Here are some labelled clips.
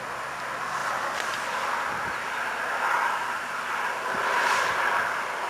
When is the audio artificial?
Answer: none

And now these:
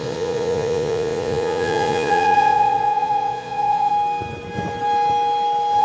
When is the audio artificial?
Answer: 0.0-3.9 (vocoder, Vocos)

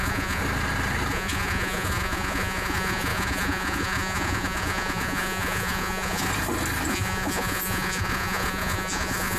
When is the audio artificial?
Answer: 0.0-0.4 (vocoder, Vocos); 1.1-6.3; 6.9-9.4

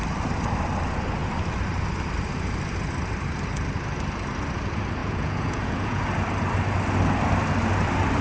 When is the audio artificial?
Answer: 5.0-6.0 (vocoder, Vocos)